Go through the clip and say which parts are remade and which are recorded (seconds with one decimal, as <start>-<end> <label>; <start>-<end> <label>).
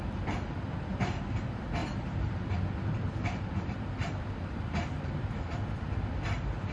0.0-6.7 remade